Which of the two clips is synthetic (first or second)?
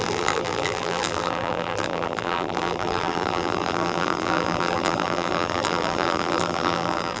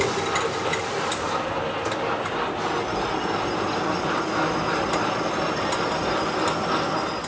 first